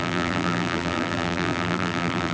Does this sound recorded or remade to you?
remade